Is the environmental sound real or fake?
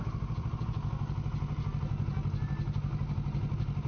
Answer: real